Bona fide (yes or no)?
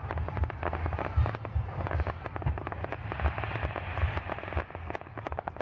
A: yes